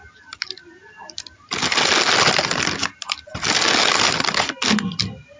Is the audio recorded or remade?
recorded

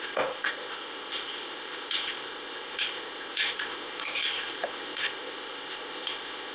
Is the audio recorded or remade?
remade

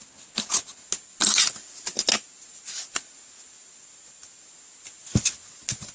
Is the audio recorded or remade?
recorded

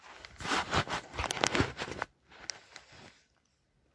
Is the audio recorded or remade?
recorded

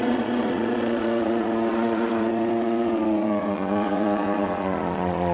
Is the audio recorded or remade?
remade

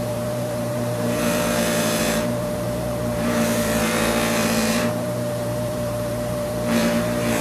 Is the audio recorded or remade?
remade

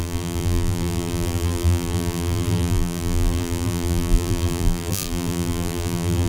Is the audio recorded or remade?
remade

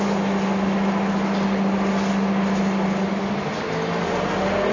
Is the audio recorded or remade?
recorded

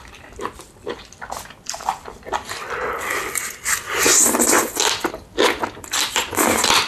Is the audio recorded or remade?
recorded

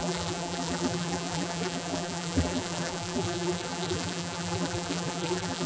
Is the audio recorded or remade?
remade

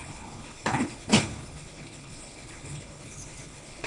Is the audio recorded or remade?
remade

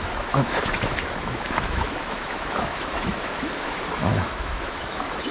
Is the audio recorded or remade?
remade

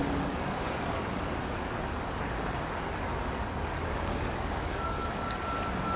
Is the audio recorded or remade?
remade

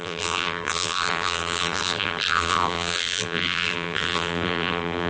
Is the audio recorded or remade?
remade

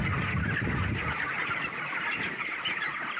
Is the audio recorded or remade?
recorded